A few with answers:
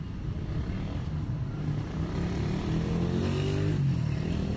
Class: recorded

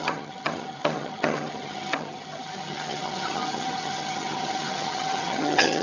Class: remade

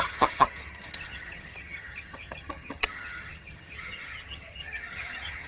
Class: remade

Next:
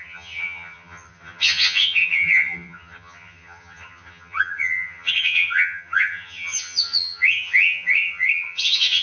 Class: remade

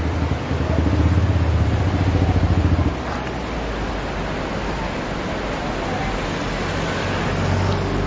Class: recorded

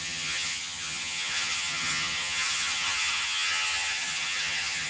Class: remade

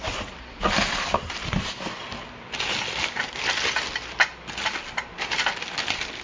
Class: recorded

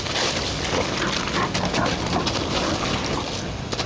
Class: recorded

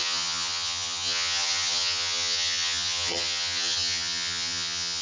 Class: remade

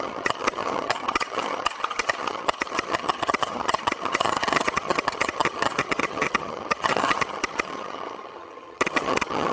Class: remade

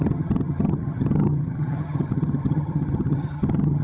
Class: remade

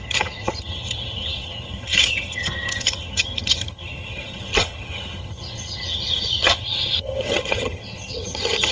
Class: remade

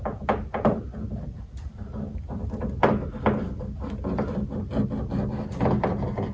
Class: recorded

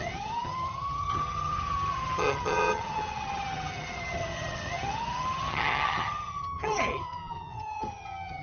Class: remade